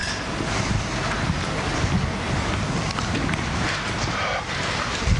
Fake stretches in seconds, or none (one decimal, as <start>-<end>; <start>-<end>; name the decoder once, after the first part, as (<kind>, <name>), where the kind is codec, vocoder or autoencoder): 3.1-5.2 (vocoder, BigVGAN v2)